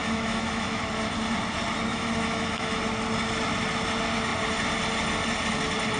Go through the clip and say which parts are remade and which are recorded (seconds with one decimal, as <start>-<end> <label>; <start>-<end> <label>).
0.0-0.8 remade; 0.8-1.9 recorded; 1.9-2.8 remade; 2.8-6.0 recorded